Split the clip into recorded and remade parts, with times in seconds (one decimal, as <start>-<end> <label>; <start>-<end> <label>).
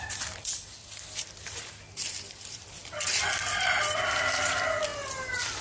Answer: 0.0-0.8 recorded; 0.8-4.2 remade; 4.2-5.6 recorded